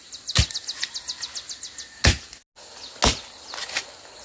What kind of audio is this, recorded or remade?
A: recorded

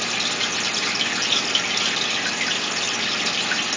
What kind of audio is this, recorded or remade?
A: recorded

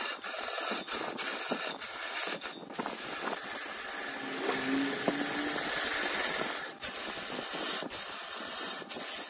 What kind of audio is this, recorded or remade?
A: recorded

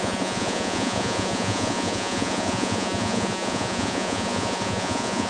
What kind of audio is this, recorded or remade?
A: remade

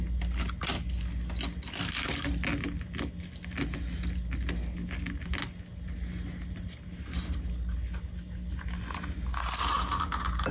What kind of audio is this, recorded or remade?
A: recorded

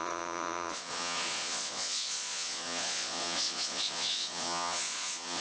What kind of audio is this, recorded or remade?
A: remade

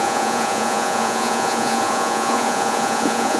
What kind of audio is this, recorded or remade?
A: remade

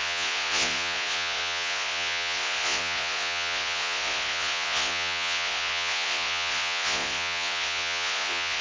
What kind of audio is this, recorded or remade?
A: remade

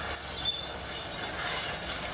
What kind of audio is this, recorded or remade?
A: recorded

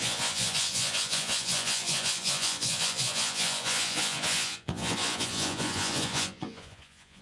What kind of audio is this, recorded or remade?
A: remade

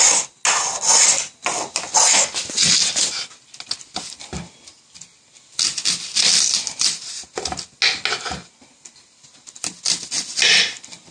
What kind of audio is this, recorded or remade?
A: recorded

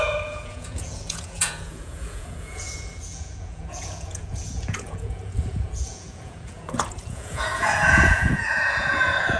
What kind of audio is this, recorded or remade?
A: remade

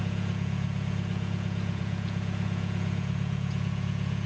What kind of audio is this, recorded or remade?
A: remade